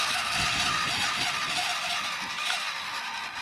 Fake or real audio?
real